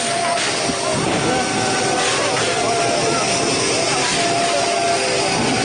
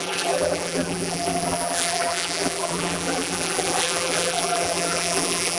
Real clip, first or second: first